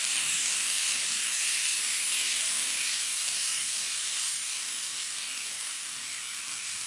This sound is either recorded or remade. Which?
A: remade